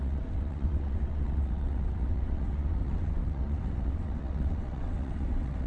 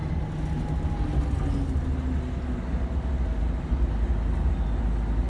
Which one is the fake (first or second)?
first